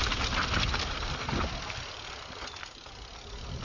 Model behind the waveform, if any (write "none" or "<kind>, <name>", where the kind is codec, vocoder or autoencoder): none